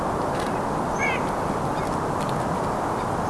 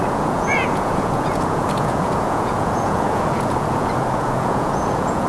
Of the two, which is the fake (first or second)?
second